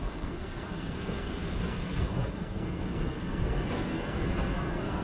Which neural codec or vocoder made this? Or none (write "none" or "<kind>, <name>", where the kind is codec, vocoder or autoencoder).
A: codec, SNAC